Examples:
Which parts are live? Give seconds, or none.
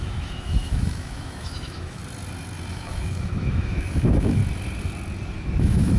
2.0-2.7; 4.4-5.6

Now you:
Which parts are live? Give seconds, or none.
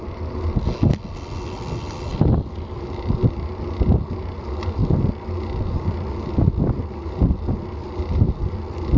0.0-9.0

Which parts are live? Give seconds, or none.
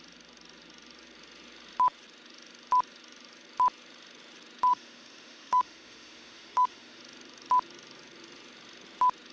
0.0-4.7; 7.0-9.3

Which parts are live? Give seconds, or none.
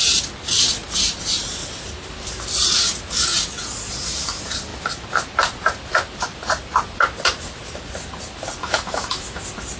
0.0-8.6; 9.4-9.8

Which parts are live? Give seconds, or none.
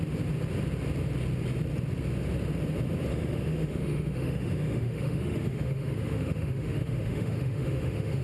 0.0-3.1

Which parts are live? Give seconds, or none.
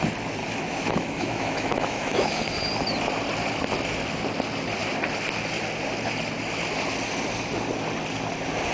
0.0-0.4; 2.4-8.7